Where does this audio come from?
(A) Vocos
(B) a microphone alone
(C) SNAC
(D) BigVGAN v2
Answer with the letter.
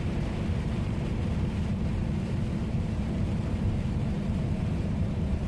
D